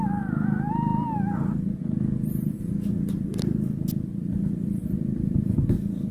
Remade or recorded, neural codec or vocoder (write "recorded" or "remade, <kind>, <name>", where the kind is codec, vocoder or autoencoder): recorded